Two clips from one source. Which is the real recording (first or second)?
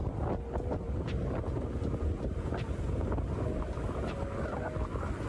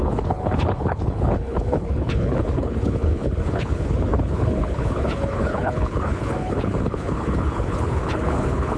first